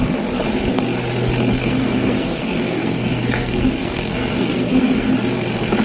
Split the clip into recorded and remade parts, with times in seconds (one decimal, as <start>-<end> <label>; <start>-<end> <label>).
0.0-1.6 recorded; 1.6-5.1 remade; 5.1-5.8 recorded